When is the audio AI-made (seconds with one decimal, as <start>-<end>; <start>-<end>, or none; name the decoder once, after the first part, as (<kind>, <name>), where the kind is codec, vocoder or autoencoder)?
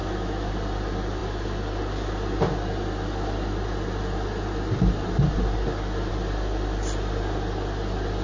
0.0-0.5 (autoencoder, DAC-VAE)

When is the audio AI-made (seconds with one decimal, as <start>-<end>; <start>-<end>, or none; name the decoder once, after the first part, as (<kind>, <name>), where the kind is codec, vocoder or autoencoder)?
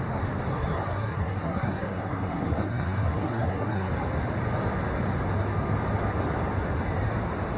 0.5-3.9 (codec, SNAC)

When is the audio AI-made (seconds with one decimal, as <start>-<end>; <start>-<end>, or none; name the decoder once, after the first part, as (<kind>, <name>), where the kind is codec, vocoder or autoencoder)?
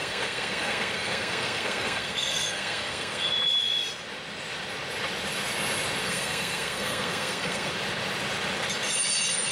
0.0-3.3 (codec, SNAC); 6.0-7.7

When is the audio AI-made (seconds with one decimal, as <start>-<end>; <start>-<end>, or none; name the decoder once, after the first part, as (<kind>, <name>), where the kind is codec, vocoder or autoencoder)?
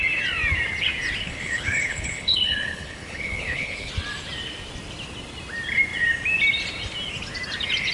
1.2-3.9 (codec, HILCodec)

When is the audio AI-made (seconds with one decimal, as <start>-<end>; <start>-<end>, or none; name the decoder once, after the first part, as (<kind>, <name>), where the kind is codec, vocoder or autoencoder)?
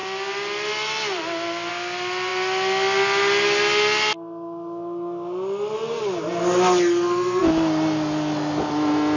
none